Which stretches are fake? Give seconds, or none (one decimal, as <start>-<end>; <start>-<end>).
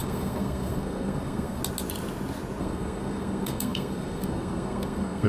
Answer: 0.0-1.6; 2.6-5.3